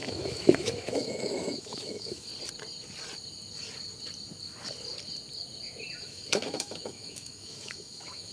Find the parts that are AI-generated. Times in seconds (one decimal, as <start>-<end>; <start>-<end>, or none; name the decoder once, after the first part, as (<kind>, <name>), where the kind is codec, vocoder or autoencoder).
0.0-2.3 (autoencoder, DAC-VAE); 6.0-8.3